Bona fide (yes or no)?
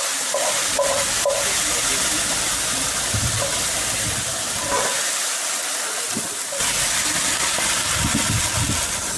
yes